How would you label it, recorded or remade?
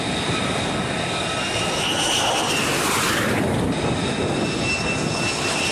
recorded